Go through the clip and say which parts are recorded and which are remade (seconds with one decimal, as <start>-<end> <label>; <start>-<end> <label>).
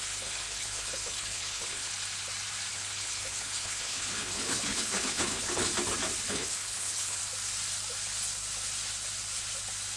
0.0-1.9 remade; 1.9-2.7 recorded; 2.7-5.7 remade; 5.7-6.3 recorded; 6.3-7.2 remade; 7.2-10.0 recorded